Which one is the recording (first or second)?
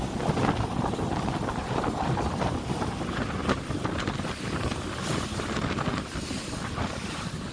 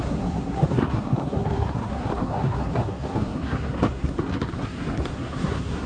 first